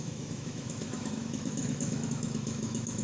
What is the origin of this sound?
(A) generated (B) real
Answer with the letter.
A